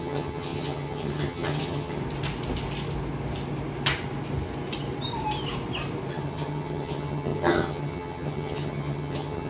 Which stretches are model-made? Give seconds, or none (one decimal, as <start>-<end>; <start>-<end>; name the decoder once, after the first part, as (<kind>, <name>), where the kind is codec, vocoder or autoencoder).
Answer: 0.0-2.0 (vocoder, HiFi-GAN); 6.1-9.5